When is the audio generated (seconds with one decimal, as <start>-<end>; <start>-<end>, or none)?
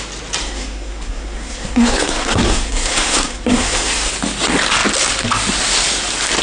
0.4-4.1